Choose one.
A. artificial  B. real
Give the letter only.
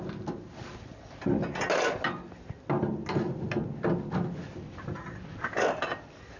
B